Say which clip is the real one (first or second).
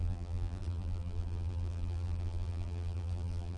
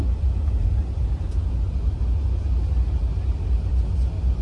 second